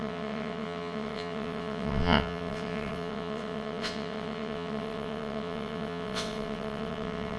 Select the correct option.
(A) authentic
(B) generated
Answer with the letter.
B